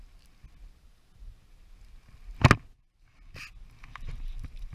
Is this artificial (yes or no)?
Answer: no